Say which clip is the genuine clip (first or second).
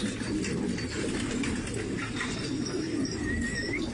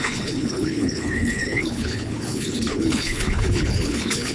first